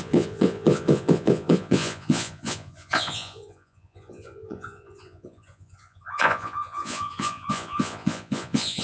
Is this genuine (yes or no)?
no